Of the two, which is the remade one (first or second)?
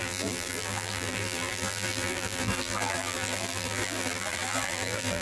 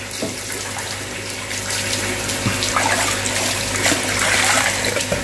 first